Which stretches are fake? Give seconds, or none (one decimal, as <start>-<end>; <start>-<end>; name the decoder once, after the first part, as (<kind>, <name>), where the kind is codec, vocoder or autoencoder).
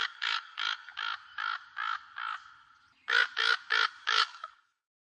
0.0-0.9 (codec, DAC); 4.0-5.1